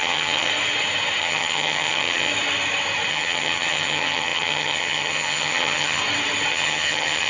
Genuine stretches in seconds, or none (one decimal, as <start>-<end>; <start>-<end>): 0.5-1.2; 2.3-3.1; 6.0-6.5